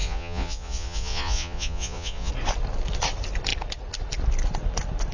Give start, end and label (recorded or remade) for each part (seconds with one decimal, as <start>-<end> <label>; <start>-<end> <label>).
0.0-2.3 remade; 2.3-5.1 recorded